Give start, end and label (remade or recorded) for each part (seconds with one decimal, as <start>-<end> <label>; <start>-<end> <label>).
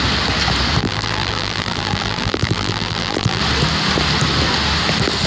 0.0-0.8 recorded; 0.8-3.4 remade; 3.4-5.3 recorded